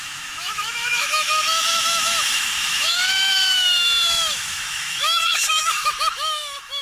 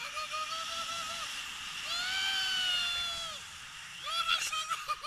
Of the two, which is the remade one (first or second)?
first